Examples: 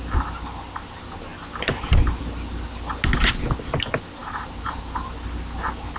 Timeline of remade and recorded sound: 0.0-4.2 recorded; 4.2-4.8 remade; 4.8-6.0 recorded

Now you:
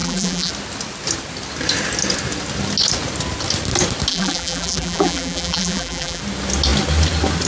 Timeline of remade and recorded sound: 0.0-0.5 remade; 0.5-4.1 recorded; 4.1-6.2 remade; 6.2-7.5 recorded